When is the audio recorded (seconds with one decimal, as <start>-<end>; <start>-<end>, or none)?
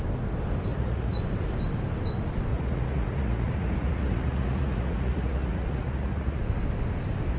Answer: 0.0-0.7; 1.2-2.5; 6.4-7.4